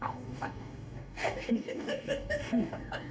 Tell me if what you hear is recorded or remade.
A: remade